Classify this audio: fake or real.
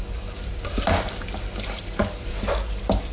fake